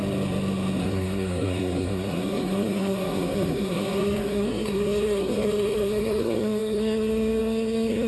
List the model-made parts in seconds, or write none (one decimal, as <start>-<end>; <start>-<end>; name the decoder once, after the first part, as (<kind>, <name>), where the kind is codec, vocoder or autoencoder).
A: 0.8-8.1 (codec, SNAC)